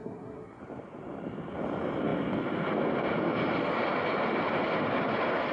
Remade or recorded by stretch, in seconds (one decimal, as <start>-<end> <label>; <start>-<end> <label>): 0.0-0.6 remade; 0.6-5.5 recorded